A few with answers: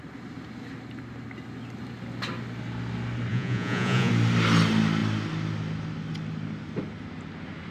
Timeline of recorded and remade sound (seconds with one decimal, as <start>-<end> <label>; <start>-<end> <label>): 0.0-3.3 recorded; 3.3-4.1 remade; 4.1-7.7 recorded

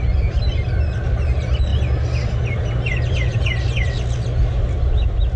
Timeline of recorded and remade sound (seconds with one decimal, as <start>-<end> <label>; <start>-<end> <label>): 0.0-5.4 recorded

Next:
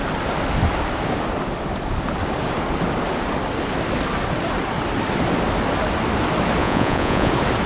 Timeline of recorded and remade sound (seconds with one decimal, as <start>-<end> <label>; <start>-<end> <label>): 0.0-6.6 recorded; 6.6-7.3 remade; 7.3-7.7 recorded

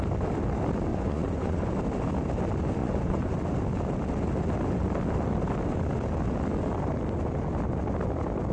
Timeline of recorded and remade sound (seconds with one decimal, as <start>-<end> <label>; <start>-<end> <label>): 0.0-0.9 recorded; 0.9-1.7 remade; 1.7-2.8 recorded; 2.8-3.4 remade; 3.4-8.5 recorded